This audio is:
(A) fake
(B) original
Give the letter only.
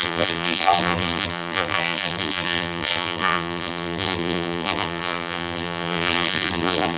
A